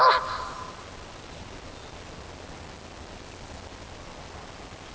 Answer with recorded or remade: recorded